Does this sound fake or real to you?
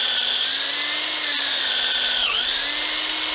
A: real